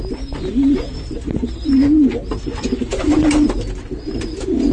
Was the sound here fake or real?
real